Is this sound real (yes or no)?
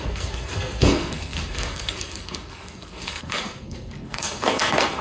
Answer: no